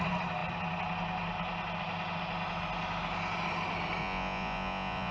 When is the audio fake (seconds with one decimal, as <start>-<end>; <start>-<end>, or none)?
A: 4.0-5.1